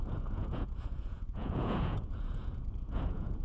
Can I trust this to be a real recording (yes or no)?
no